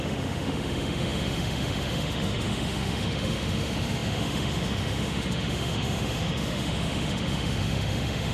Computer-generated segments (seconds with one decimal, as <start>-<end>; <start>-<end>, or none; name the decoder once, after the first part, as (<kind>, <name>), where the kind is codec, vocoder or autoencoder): 0.0-8.3 (autoencoder, DAC-VAE)